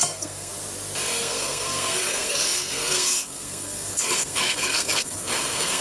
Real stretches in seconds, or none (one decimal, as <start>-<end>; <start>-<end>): 0.5-1.1